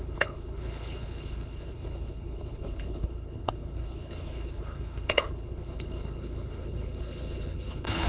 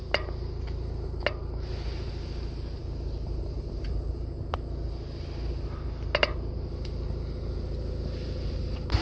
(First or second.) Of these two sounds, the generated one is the first